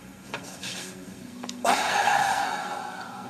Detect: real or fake fake